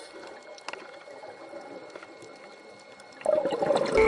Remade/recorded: recorded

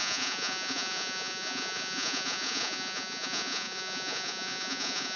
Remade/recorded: remade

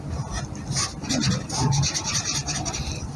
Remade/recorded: recorded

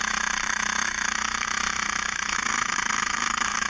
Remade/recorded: remade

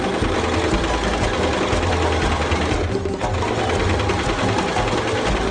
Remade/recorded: recorded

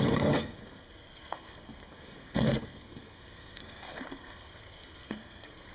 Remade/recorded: remade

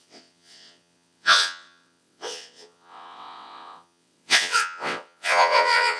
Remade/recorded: remade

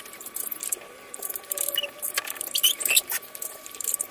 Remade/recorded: remade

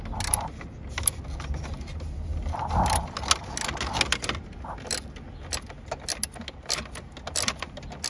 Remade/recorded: recorded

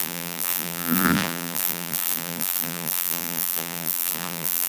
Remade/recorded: remade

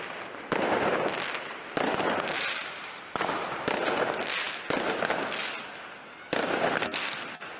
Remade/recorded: recorded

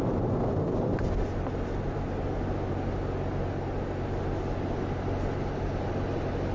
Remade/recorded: recorded